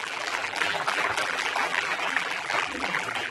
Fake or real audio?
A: fake